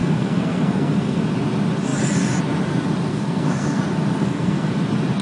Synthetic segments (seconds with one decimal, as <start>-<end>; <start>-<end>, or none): 0.0-1.2; 3.1-3.8; 4.2-4.7

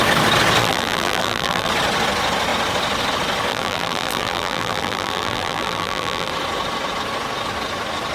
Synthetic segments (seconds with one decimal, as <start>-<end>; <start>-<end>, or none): 0.6-1.7; 3.5-6.3